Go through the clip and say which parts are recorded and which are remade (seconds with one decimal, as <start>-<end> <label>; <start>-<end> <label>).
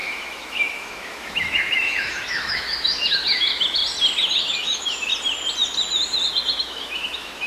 0.0-3.8 remade; 3.8-4.4 recorded; 4.4-5.1 remade; 5.1-6.6 recorded; 6.6-7.5 remade